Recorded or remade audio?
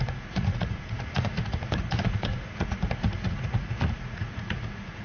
remade